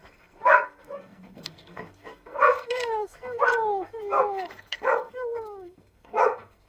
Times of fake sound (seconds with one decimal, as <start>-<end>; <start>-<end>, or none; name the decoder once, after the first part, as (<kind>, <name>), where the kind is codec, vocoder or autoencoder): 0.0-6.7 (codec, SNAC)